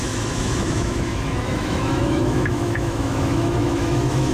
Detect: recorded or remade remade